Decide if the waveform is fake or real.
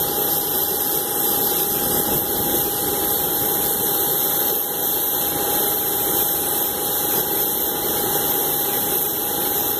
real